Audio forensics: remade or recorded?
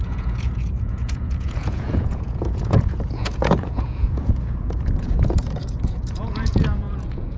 remade